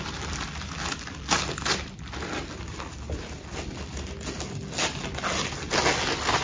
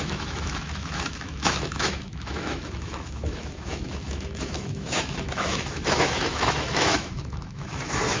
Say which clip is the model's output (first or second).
second